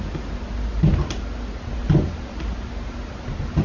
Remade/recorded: recorded